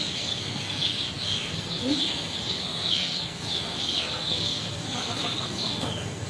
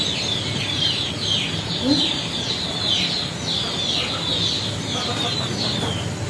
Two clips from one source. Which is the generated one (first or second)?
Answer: first